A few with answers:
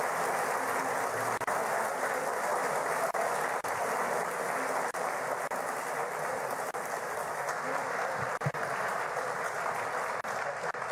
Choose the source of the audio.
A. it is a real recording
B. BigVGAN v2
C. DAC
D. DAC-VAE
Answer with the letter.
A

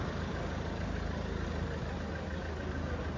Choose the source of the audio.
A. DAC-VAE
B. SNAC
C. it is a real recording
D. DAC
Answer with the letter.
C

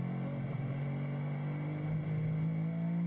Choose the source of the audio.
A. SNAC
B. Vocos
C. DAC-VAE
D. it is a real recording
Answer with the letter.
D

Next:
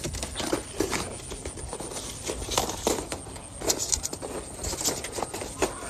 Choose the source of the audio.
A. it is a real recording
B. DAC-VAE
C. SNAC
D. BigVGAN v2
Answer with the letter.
A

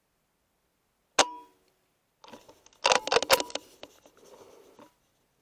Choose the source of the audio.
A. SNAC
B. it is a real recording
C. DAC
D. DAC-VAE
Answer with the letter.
B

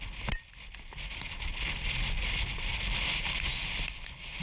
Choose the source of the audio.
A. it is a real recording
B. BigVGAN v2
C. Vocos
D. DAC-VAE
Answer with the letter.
A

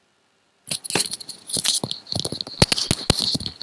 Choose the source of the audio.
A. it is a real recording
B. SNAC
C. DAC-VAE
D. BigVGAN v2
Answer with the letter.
A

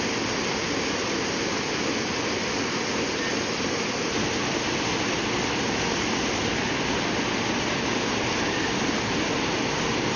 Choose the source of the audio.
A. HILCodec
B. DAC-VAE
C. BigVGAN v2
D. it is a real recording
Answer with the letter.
D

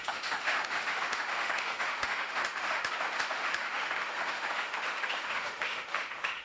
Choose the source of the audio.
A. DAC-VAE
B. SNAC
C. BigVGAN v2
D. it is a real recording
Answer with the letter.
A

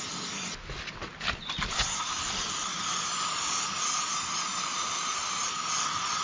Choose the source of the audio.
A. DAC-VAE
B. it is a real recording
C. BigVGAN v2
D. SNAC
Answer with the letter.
B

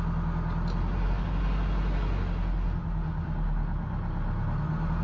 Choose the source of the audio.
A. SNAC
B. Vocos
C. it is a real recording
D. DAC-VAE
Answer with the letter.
C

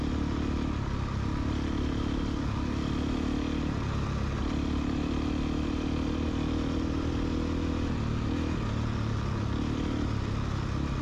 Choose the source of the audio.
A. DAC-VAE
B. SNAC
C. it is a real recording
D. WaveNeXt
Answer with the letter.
C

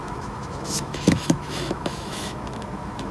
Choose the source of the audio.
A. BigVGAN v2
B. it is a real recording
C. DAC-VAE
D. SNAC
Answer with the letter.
C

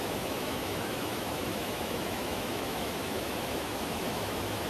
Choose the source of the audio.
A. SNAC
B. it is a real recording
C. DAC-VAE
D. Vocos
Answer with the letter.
C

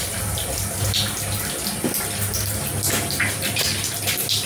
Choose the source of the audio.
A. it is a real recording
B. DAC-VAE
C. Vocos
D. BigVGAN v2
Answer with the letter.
A